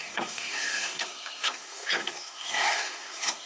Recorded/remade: remade